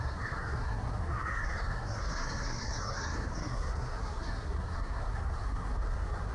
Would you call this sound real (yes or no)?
no